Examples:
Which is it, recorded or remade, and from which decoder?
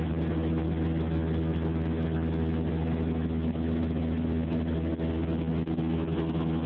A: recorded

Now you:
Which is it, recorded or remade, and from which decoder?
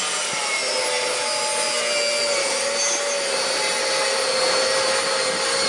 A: recorded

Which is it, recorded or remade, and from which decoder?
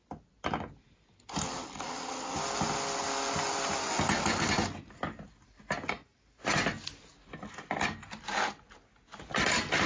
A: recorded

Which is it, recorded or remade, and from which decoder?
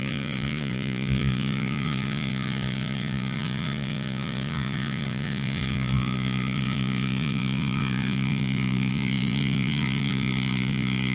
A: remade, vocoder, Vocos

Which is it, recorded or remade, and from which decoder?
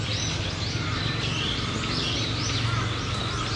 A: recorded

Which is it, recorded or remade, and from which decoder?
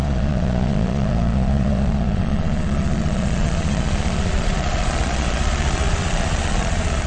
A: remade, vocoder, Vocos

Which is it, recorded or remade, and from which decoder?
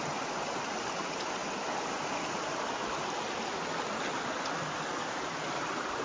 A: recorded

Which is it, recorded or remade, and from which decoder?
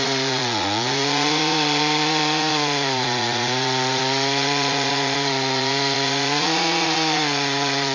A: remade, vocoder, Vocos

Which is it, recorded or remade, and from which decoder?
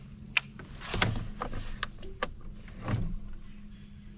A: recorded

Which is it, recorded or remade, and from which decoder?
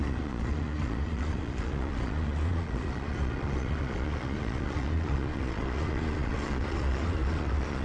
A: remade, vocoder, Vocos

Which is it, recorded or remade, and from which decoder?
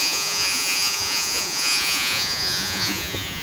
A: remade, vocoder, Vocos